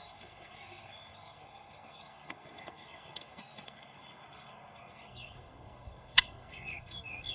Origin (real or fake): fake